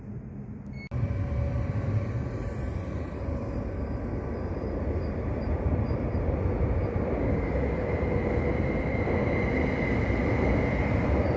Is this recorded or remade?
recorded